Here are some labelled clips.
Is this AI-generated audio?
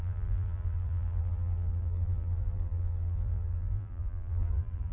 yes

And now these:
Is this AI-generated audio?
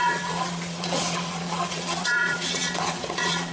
yes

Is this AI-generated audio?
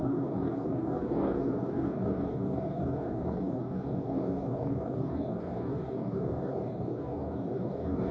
yes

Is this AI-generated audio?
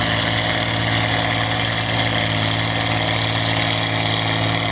no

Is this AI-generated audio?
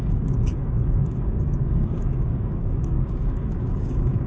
yes